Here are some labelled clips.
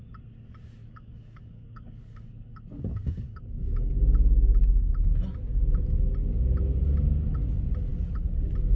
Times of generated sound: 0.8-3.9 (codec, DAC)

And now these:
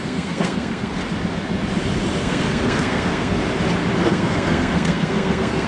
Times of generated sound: 0.0-1.0 (codec, SNAC); 2.2-3.4; 4.1-5.7

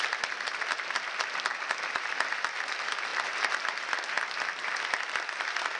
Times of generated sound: none

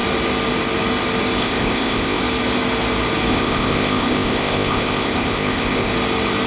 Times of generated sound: 1.4-2.2 (codec, ZipCodec); 3.3-5.9

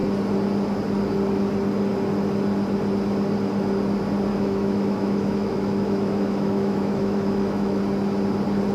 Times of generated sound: 4.3-7.8 (autoencoder, DAC-VAE)

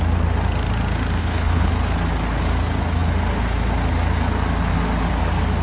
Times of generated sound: 1.2-1.7 (codec, HILCodec)

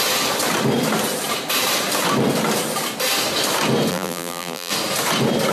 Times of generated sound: 3.9-4.7 (vocoder, BigVGAN v2)

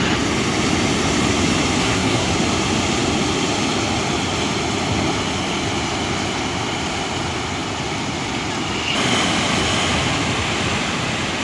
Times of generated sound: 1.8-2.3 (codec, SNAC)